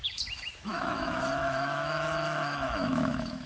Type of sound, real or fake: fake